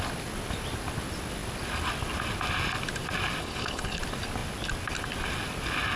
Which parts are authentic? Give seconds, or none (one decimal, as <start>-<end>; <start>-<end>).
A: 0.0-3.4; 4.0-6.0